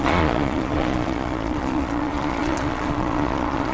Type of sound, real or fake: fake